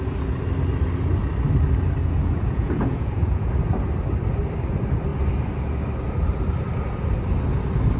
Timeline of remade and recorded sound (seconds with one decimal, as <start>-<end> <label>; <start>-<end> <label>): 0.0-2.0 recorded; 2.0-3.5 remade; 3.5-8.0 recorded